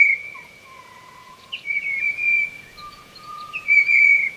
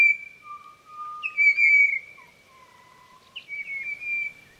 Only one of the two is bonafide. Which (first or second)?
second